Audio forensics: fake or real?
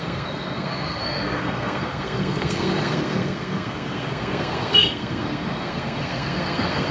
fake